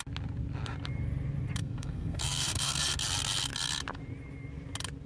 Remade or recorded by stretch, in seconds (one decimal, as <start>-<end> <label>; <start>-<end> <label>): 0.0-1.6 recorded; 1.6-2.8 remade; 2.8-5.1 recorded